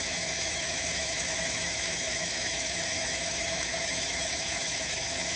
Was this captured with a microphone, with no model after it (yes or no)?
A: no